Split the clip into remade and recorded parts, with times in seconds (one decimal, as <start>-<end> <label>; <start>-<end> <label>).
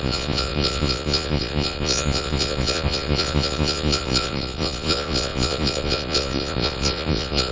0.0-7.5 remade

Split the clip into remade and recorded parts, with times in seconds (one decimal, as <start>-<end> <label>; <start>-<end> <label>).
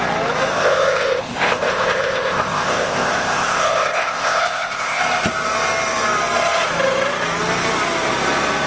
0.0-0.5 recorded; 0.5-5.0 remade; 5.0-8.7 recorded